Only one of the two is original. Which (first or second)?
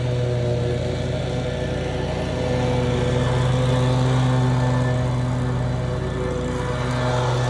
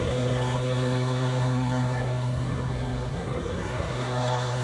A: first